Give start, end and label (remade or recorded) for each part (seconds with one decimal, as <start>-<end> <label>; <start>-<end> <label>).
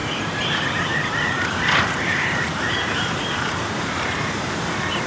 0.0-5.1 remade